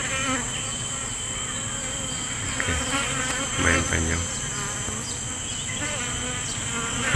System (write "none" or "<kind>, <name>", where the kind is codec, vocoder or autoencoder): none